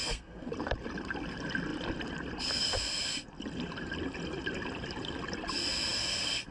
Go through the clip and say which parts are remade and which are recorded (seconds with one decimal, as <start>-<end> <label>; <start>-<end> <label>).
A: 0.0-0.5 remade; 0.5-6.5 recorded